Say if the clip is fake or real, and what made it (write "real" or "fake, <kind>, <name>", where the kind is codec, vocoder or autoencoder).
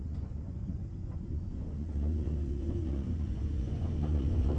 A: fake, vocoder, Vocos